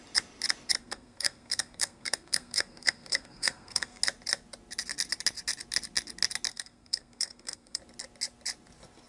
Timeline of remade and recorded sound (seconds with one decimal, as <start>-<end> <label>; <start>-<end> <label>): 0.0-0.8 recorded; 0.8-4.0 remade; 4.0-6.5 recorded; 6.5-7.8 remade; 7.8-9.1 recorded